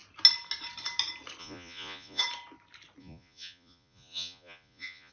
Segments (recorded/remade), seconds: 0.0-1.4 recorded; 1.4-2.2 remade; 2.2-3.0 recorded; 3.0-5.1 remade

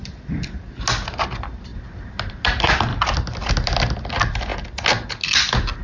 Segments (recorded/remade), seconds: 0.0-5.8 recorded

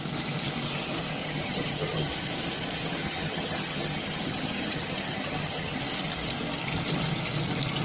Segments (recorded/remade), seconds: 0.0-1.2 recorded; 1.2-2.1 remade; 2.1-3.0 recorded; 3.0-5.8 remade; 5.8-7.8 recorded

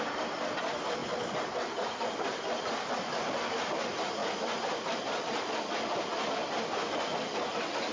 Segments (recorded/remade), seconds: 0.0-4.2 recorded; 4.2-6.3 remade; 6.3-7.9 recorded

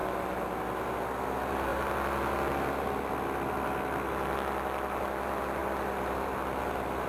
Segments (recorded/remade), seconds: 0.0-7.1 recorded

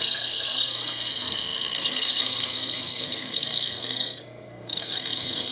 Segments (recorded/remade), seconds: 0.0-5.5 remade